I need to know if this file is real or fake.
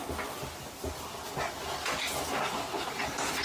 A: real